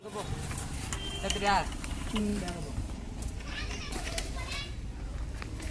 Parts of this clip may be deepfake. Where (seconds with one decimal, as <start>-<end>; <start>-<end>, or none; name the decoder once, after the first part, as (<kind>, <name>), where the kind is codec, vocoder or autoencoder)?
1.1-5.1 (vocoder, BigVGAN v2)